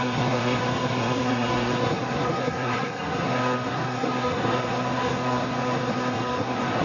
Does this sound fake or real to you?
fake